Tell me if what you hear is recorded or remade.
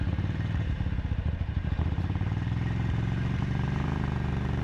remade